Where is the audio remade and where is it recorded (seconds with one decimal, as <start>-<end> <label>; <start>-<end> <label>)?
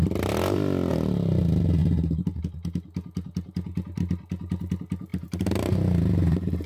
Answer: 0.0-0.9 recorded; 0.9-1.4 remade; 1.4-1.8 recorded; 1.8-2.4 remade; 2.4-5.1 recorded; 5.1-6.7 remade